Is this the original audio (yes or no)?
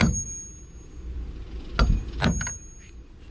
yes